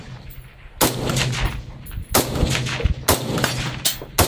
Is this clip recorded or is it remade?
recorded